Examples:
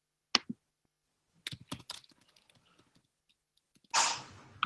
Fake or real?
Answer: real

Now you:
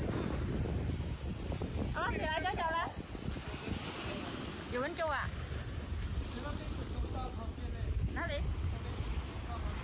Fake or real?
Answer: real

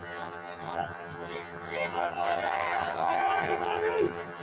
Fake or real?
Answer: fake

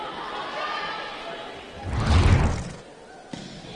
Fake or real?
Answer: real